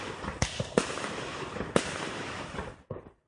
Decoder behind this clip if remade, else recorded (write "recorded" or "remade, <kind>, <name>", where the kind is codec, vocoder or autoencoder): recorded